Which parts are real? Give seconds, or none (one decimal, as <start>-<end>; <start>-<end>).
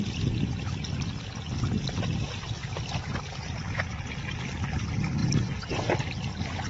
0.0-6.7